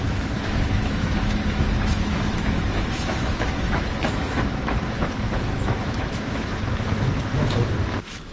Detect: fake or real fake